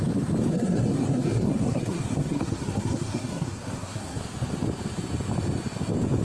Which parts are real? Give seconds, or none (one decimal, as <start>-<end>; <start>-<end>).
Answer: 0.0-0.5; 4.2-6.2

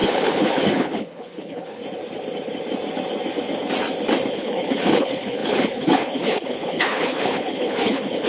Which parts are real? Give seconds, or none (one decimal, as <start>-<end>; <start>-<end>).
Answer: 1.8-4.3

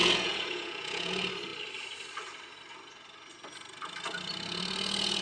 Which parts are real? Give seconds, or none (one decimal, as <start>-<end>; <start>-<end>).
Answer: 1.1-5.2

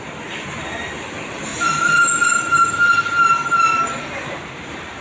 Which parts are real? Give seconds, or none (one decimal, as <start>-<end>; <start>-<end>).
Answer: 1.5-4.0

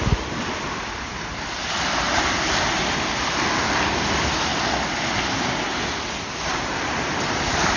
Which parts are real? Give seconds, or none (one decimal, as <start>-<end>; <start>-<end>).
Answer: 0.0-7.8